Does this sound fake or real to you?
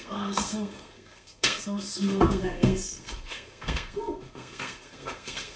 fake